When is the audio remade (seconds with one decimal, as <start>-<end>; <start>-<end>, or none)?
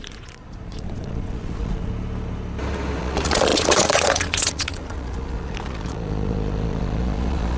0.0-1.9; 3.0-7.6